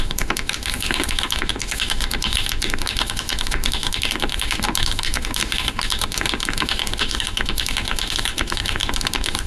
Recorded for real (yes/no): no